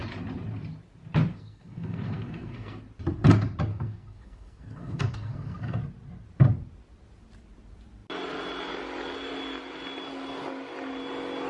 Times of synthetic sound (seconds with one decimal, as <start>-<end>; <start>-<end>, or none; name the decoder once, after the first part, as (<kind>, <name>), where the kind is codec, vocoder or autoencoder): 1.3-2.8 (codec, SNAC); 3.7-5.8